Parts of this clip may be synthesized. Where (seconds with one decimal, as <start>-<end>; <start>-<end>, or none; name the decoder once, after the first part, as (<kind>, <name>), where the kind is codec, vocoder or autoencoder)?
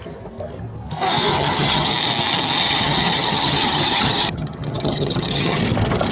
1.3-1.9 (vocoder, HiFi-GAN); 2.6-5.6